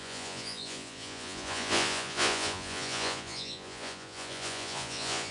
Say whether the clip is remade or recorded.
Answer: remade